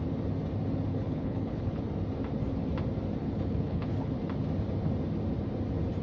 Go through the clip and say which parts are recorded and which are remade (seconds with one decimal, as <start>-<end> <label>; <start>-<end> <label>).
0.0-0.9 recorded; 0.9-1.8 remade; 1.8-3.2 recorded; 3.2-4.1 remade; 4.1-6.0 recorded